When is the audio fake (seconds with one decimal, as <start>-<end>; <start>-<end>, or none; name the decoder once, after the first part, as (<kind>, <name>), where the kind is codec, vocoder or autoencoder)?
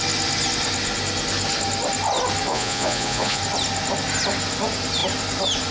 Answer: 2.5-3.4 (vocoder, Vocos)